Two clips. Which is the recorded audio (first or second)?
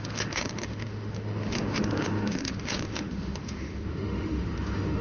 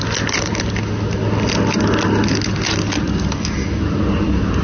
second